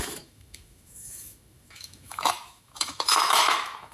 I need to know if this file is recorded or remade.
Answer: remade